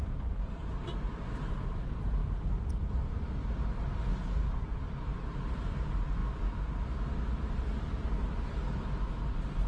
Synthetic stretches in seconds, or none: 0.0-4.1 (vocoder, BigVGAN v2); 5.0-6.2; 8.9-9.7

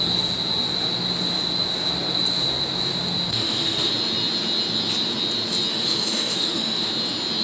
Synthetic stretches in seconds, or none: 3.3-3.9 (autoencoder, DAC-VAE); 5.7-6.9